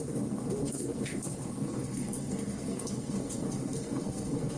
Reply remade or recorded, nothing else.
remade